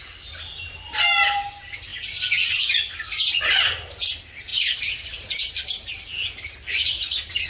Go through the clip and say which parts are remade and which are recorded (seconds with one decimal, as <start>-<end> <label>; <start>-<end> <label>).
0.0-7.5 recorded

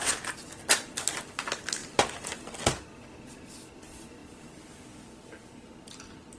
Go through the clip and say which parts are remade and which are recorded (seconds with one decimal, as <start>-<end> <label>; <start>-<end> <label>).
0.0-4.2 recorded; 4.2-4.7 remade; 4.7-6.4 recorded